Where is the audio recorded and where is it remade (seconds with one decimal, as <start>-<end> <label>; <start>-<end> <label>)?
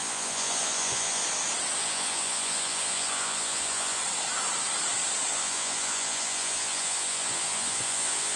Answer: 0.0-1.2 remade; 1.2-1.8 recorded; 1.8-4.0 remade; 4.0-5.3 recorded; 5.3-8.4 remade